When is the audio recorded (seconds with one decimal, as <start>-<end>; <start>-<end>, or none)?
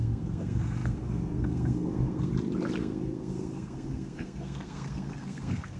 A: 2.3-2.8